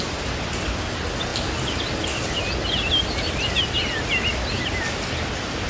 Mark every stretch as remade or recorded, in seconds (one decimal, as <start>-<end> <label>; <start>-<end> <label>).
0.0-5.7 recorded